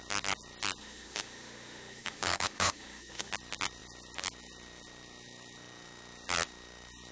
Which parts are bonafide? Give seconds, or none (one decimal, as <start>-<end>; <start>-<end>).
0.0-0.8; 3.3-7.1